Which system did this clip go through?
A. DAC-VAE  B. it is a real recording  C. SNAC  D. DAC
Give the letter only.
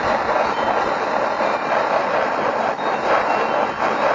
B